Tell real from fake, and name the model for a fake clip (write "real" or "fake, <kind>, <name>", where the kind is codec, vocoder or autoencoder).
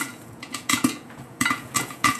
fake, vocoder, Vocos